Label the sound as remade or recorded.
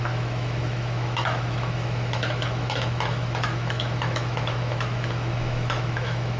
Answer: remade